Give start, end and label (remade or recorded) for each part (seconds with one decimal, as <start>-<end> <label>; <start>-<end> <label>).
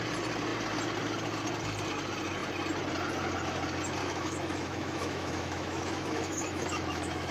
0.0-4.0 recorded; 4.0-7.3 remade